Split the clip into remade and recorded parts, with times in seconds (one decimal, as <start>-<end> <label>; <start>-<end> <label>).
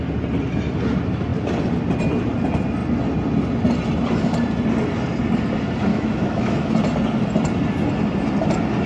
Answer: 0.0-5.9 recorded; 5.9-6.7 remade; 6.7-8.9 recorded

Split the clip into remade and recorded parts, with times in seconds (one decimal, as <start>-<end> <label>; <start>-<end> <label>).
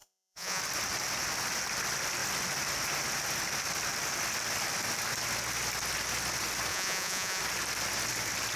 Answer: 0.0-0.6 remade; 0.6-6.7 recorded; 6.7-7.4 remade; 7.4-8.6 recorded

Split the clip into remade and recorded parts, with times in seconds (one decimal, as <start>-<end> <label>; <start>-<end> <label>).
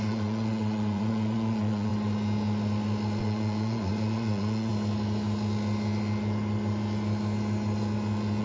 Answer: 0.0-1.9 remade; 1.9-3.2 recorded; 3.2-4.7 remade; 4.7-8.4 recorded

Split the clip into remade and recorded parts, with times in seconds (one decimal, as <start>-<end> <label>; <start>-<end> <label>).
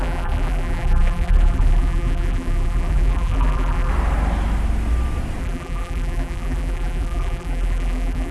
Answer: 0.0-3.9 remade; 3.9-5.4 recorded; 5.4-8.3 remade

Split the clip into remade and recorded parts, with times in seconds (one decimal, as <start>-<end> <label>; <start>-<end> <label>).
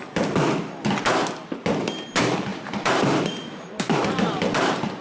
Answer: 0.0-2.5 recorded; 2.5-5.0 remade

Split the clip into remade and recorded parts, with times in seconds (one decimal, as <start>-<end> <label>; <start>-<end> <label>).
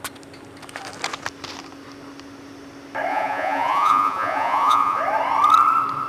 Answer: 0.0-3.1 recorded; 3.1-5.0 remade; 5.0-6.1 recorded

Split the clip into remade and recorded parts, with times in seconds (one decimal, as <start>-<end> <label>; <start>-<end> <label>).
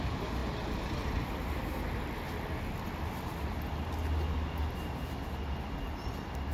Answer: 0.0-6.5 recorded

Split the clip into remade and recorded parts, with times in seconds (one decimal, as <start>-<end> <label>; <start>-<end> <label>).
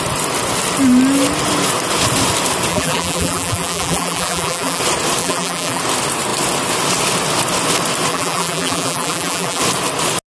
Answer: 0.0-2.7 recorded; 2.7-4.8 remade; 4.8-5.2 recorded; 5.2-5.8 remade; 5.8-8.1 recorded; 8.1-9.6 remade; 9.6-10.3 recorded